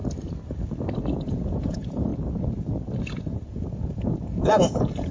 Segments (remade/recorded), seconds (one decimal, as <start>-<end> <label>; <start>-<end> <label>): 0.0-1.3 recorded; 1.3-2.1 remade; 2.1-3.0 recorded; 3.0-5.1 remade